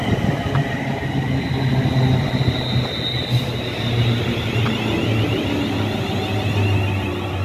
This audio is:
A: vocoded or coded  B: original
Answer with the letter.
B